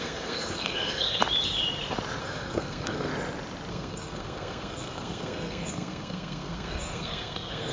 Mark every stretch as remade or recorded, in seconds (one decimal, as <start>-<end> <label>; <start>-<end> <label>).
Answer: 0.0-1.2 remade; 1.2-2.2 recorded; 2.2-3.1 remade; 3.1-3.7 recorded; 3.7-7.7 remade